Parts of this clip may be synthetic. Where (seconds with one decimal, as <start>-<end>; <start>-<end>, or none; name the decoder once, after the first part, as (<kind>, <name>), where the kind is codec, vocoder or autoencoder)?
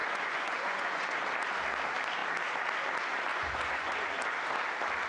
0.0-1.2 (vocoder, Vocos); 3.3-4.1